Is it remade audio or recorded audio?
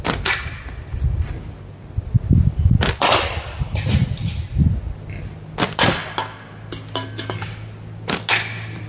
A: recorded